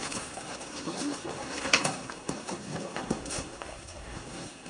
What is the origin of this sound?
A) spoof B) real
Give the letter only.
A